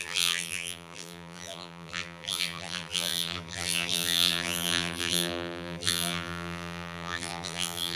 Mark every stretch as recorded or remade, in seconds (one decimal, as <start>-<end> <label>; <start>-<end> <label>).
0.0-8.0 remade